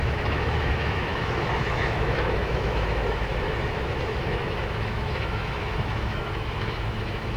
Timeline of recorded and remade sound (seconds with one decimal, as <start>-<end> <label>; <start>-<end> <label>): 0.0-7.4 remade